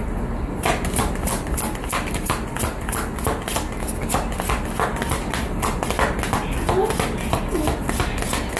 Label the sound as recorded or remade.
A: recorded